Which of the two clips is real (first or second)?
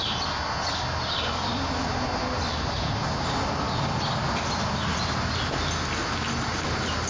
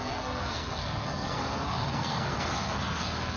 first